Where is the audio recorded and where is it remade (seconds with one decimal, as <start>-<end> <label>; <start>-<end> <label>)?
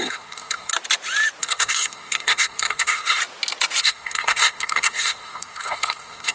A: 0.0-0.7 remade; 0.7-1.4 recorded; 1.4-3.2 remade; 3.2-3.8 recorded; 3.8-6.3 remade